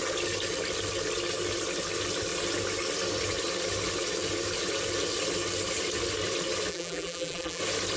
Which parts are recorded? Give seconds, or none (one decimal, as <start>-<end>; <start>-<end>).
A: 0.0-6.7; 7.6-8.0